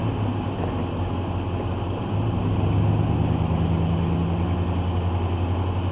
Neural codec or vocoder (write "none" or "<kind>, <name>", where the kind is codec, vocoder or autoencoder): none